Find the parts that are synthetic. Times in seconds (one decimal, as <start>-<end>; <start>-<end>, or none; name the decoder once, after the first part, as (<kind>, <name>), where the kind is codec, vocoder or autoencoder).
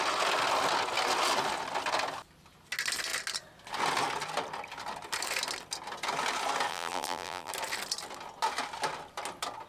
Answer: 6.7-7.5 (vocoder, BigVGAN v2)